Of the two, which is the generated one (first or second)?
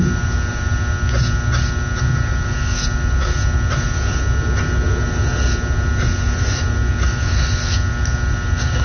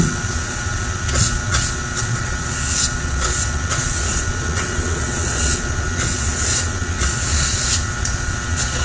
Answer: second